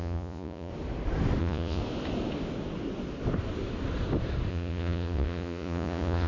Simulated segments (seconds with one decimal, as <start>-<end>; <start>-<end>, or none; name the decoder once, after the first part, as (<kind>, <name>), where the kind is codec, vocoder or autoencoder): 0.0-0.7 (vocoder, Vocos); 1.4-1.8; 4.5-6.3